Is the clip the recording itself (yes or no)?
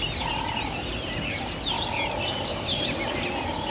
yes